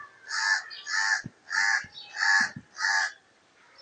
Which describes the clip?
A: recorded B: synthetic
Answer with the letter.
A